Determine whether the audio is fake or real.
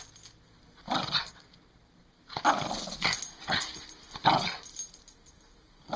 real